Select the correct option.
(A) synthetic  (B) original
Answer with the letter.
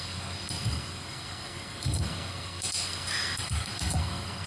A